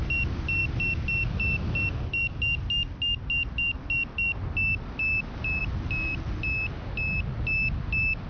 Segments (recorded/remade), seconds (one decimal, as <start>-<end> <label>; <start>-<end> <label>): 0.0-8.3 recorded